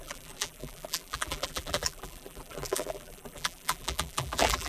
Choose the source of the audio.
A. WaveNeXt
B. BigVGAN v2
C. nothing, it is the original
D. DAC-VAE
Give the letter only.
B